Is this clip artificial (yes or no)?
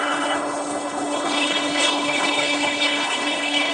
yes